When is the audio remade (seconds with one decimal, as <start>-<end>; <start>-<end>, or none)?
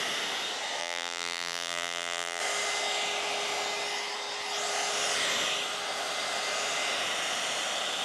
0.8-2.4